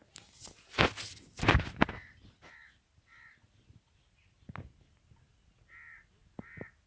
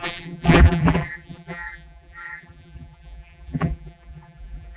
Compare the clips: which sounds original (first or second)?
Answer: first